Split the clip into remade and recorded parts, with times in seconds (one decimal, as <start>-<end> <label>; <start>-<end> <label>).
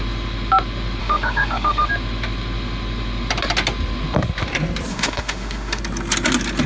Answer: 0.0-1.0 recorded; 1.0-1.9 remade; 1.9-4.9 recorded; 4.9-5.8 remade; 5.8-6.7 recorded